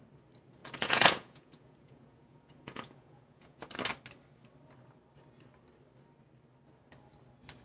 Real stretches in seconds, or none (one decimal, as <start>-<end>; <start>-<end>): 0.0-0.6; 3.7-7.6